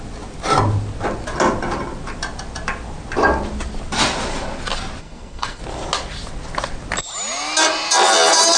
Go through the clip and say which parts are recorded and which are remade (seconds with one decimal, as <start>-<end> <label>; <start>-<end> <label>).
0.0-5.0 recorded; 5.0-5.6 remade; 5.6-8.6 recorded